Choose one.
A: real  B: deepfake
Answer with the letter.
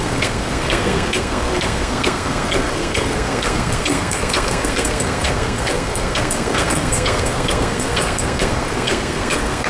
B